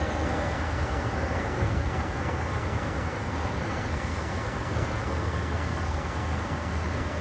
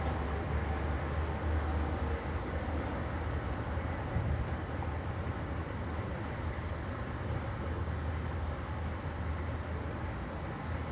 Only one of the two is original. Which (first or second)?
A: second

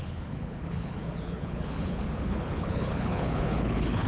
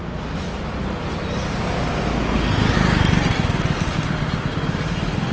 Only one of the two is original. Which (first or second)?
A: second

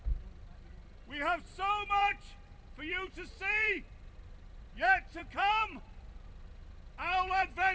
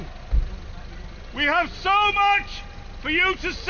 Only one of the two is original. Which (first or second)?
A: second